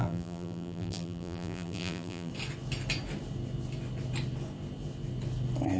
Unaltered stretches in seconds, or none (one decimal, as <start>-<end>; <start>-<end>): 2.3-5.8